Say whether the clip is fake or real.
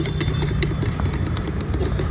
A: real